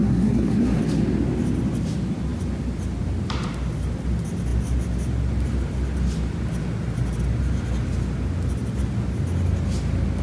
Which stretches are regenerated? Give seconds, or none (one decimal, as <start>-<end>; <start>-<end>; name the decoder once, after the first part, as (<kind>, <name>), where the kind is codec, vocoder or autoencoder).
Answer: 0.0-0.8 (codec, SNAC)